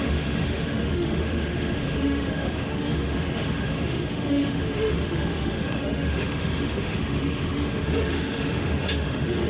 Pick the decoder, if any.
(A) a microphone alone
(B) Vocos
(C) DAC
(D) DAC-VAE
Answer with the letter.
D